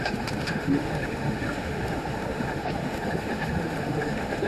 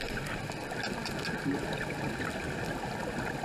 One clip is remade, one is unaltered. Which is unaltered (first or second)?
second